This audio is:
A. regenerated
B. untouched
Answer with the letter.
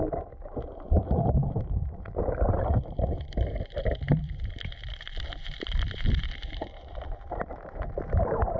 A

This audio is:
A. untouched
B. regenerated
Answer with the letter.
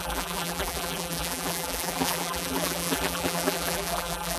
B